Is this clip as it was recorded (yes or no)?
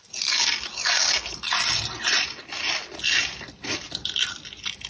yes